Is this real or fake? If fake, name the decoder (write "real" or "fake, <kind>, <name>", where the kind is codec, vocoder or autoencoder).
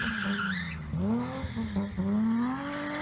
real